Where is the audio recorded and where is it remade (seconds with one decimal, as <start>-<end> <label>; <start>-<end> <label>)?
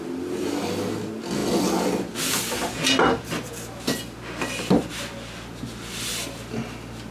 0.0-7.1 recorded